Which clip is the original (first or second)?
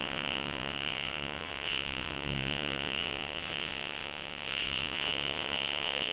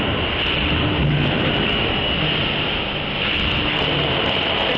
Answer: second